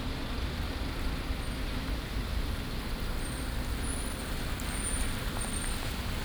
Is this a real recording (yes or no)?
yes